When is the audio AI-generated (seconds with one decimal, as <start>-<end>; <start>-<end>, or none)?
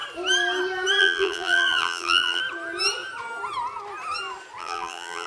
1.0-2.4; 4.6-5.3